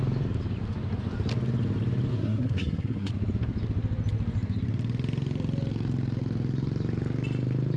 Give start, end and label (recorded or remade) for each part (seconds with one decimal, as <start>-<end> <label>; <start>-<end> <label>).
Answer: 0.0-2.1 recorded; 2.1-3.1 remade; 3.1-7.8 recorded